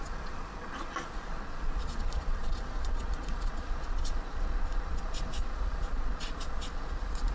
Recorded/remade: remade